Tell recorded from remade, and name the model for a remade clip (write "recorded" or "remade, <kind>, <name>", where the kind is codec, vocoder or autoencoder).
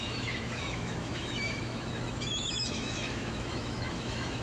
remade, autoencoder, DAC-VAE